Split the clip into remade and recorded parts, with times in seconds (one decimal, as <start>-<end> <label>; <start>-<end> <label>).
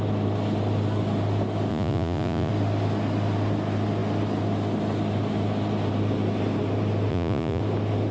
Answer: 0.0-1.7 recorded; 1.7-2.5 remade; 2.5-7.1 recorded; 7.1-7.6 remade; 7.6-8.1 recorded